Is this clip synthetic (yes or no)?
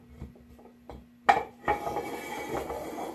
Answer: no